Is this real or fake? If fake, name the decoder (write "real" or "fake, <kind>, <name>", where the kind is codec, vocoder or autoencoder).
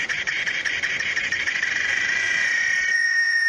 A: fake, vocoder, Vocos